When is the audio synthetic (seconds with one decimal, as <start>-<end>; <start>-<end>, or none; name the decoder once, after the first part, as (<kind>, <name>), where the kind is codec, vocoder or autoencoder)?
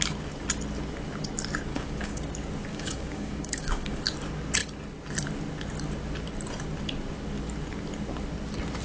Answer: 1.7-2.2 (codec, DAC); 2.7-4.0